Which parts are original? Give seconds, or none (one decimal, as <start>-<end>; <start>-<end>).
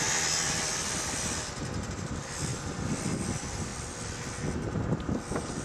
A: 3.7-4.9